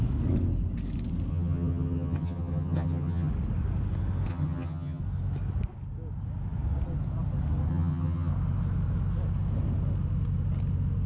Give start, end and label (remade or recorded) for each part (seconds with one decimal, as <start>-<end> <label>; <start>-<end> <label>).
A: 0.0-1.3 recorded; 1.3-3.3 remade; 3.3-4.3 recorded; 4.3-5.0 remade; 5.0-7.7 recorded; 7.7-8.3 remade; 8.3-11.1 recorded